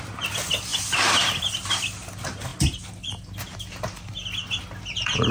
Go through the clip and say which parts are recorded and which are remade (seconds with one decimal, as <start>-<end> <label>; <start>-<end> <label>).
0.0-5.3 recorded